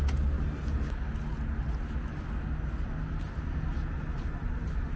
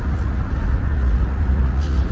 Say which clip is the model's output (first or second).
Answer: second